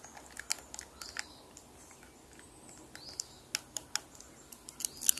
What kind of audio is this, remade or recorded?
recorded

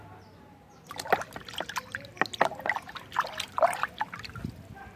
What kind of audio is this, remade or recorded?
recorded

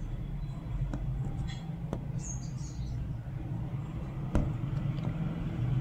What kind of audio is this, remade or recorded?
recorded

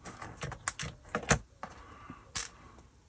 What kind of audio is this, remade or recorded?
recorded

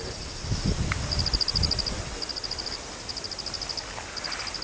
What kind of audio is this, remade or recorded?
recorded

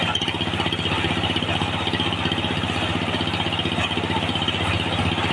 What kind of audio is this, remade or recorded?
recorded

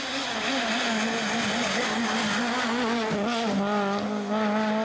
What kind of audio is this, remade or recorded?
recorded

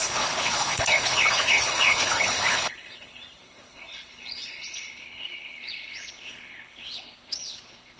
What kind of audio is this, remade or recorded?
remade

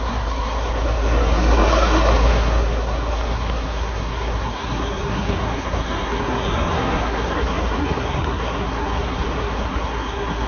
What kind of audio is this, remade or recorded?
remade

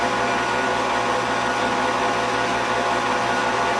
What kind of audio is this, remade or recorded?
recorded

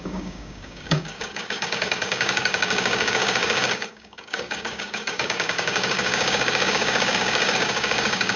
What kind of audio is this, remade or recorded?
remade